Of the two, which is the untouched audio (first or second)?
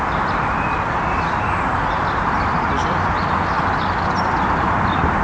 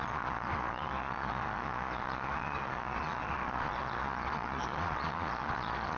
first